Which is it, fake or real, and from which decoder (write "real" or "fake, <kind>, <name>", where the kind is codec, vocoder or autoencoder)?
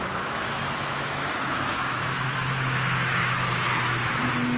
fake, autoencoder, DAC-VAE